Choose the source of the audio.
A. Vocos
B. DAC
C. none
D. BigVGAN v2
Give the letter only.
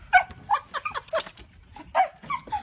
C